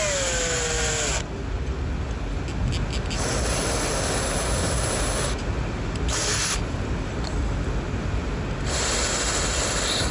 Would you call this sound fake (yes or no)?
no